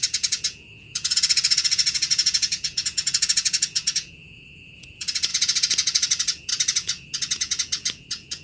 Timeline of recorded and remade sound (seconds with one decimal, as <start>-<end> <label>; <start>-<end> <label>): 0.0-8.4 remade